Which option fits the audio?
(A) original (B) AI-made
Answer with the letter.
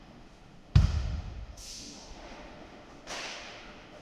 B